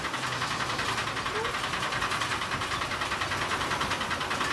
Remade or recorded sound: recorded